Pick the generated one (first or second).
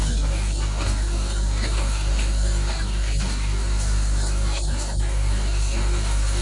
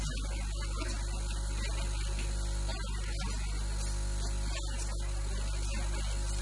first